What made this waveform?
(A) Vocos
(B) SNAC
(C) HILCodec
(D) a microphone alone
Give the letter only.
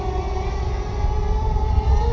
D